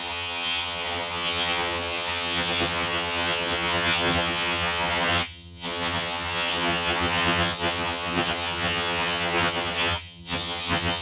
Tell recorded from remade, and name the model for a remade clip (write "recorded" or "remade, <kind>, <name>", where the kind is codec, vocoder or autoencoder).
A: remade, vocoder, HiFi-GAN